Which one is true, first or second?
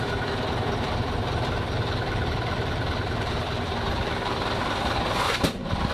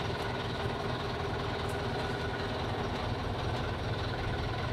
second